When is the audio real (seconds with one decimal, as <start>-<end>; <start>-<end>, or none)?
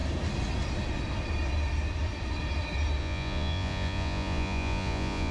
0.0-3.0